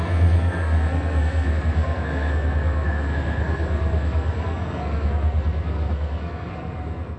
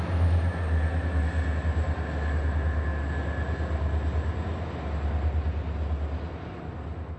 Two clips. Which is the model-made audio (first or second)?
first